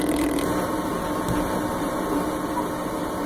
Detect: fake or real fake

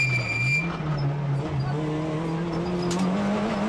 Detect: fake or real real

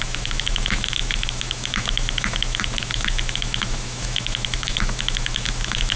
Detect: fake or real fake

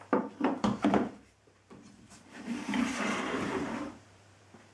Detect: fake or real fake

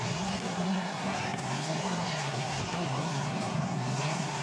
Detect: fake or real fake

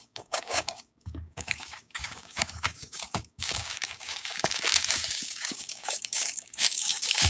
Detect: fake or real fake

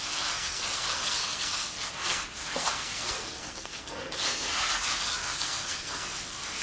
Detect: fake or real fake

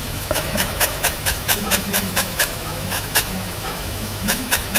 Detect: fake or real fake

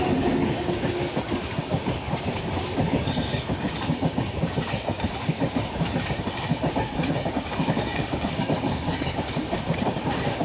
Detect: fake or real fake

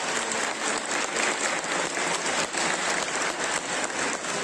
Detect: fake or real real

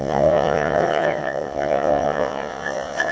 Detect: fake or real fake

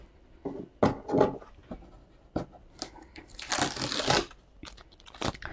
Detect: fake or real real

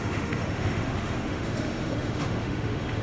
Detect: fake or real fake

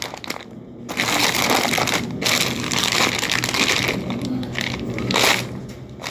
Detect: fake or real real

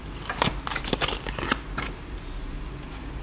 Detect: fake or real real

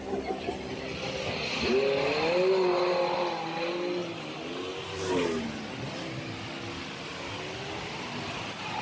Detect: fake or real real